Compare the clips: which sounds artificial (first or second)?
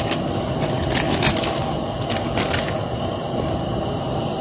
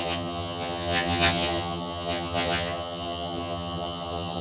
second